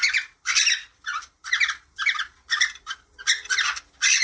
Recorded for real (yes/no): yes